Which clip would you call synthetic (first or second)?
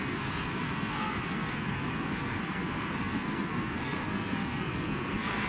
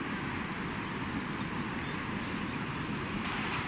first